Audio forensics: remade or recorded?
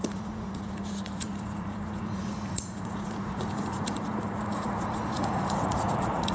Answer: remade